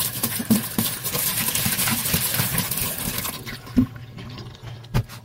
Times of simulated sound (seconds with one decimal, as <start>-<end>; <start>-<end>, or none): 0.0-2.0